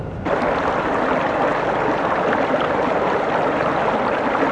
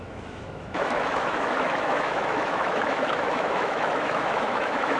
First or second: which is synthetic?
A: second